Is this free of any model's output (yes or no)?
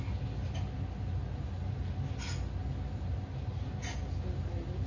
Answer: yes